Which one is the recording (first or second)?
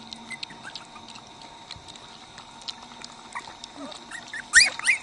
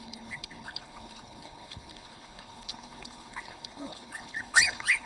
first